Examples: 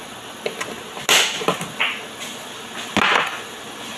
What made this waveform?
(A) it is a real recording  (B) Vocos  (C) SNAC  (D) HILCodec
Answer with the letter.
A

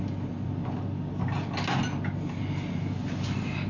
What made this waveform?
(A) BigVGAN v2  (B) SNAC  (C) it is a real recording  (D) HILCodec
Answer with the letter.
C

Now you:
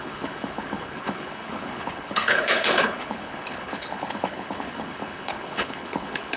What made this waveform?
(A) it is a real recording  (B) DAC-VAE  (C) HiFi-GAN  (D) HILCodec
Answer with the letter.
D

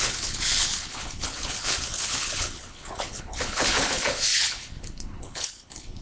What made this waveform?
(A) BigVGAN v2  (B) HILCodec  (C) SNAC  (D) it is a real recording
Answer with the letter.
B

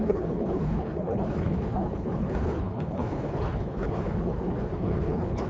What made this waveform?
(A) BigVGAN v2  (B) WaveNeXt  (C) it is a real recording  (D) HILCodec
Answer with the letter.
D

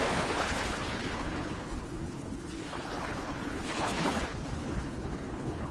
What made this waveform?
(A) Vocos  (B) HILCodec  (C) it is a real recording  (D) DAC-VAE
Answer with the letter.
B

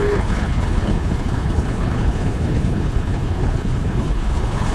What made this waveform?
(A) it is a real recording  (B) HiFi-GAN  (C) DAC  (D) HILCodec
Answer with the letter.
D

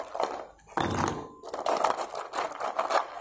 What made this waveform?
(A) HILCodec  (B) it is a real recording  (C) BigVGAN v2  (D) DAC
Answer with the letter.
B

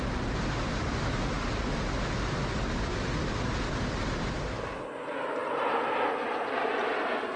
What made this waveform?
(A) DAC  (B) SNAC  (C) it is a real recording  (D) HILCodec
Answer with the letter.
C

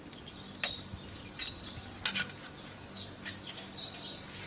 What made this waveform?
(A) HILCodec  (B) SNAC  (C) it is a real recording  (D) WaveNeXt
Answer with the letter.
C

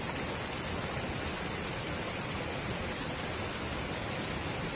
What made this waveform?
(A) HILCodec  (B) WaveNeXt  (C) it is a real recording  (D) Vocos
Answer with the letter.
C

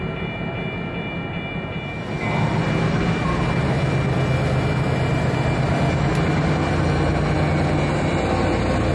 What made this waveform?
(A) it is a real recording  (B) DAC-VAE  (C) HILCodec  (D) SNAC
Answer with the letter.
A